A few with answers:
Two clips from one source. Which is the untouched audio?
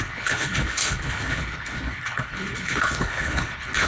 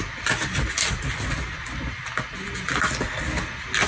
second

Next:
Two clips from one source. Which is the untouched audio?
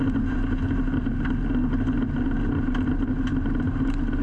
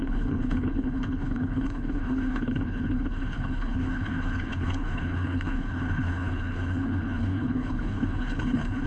first